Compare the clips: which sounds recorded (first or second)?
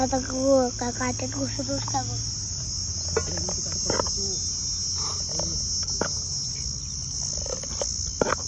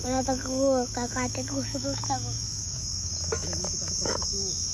first